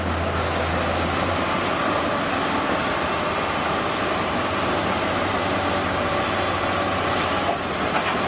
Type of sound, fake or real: real